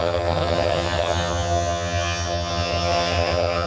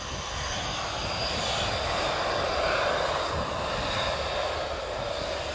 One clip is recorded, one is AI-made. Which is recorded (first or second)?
second